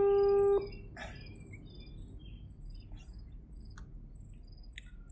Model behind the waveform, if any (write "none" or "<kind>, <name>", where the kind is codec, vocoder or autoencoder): none